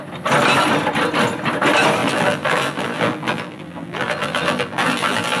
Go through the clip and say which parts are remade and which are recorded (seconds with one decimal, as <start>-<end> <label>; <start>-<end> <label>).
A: 0.0-2.0 recorded; 2.0-5.4 remade